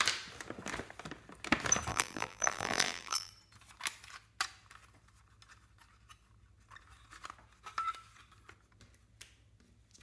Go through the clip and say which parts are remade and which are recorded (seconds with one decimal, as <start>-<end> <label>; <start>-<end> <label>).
0.0-1.9 recorded; 1.9-3.3 remade; 3.3-10.0 recorded